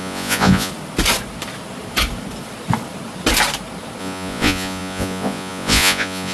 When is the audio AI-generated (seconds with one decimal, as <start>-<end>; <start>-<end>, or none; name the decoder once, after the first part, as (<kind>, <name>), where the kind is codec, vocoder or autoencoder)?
0.0-0.7 (vocoder, Vocos); 4.0-6.3